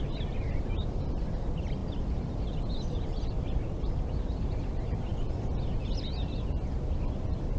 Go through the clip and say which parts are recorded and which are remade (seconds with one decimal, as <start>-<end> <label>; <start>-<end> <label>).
0.0-7.6 recorded